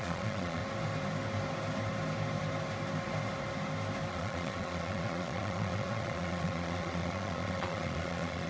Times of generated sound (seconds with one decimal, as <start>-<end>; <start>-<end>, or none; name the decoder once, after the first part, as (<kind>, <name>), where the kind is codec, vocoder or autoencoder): 0.0-0.6 (vocoder, Vocos); 4.1-8.5